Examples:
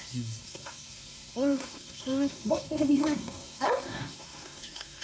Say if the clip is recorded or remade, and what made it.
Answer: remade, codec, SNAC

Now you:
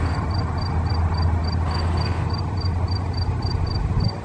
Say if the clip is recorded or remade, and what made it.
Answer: recorded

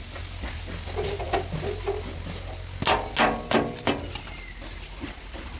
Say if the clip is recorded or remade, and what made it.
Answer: recorded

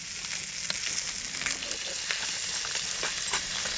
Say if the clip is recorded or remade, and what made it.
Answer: recorded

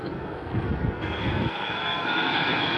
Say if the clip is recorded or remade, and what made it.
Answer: remade, codec, SNAC